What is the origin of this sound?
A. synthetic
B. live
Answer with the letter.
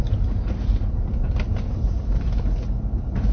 B